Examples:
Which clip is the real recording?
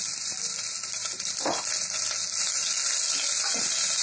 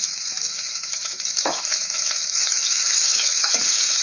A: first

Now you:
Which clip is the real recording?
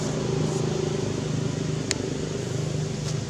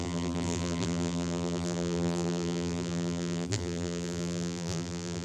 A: first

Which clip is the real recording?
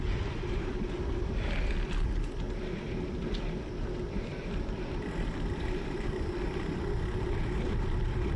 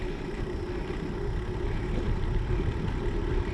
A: second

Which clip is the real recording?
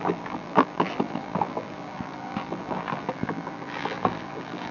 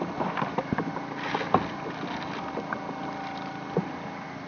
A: second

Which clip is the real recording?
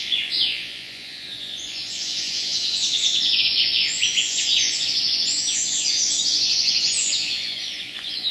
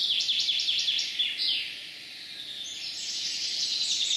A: second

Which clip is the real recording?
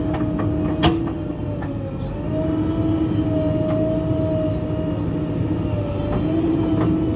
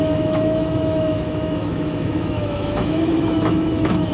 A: first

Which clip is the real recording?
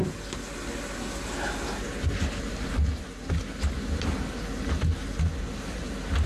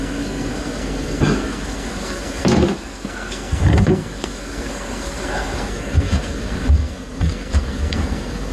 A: first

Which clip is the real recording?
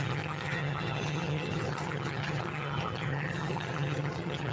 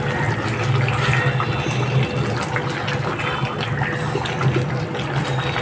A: second